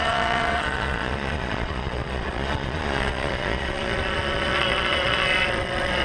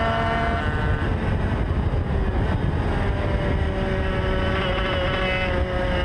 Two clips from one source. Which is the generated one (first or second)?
first